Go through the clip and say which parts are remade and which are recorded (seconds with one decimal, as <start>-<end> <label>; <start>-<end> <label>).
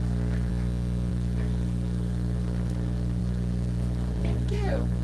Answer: 0.0-0.5 remade; 0.5-1.1 recorded; 1.1-5.0 remade